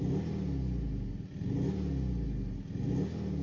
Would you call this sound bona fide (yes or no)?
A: yes